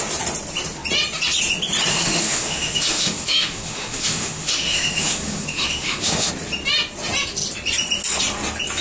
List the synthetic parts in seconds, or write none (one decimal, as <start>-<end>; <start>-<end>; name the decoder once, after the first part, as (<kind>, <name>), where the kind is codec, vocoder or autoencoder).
1.9-6.3 (autoencoder, DAC-VAE)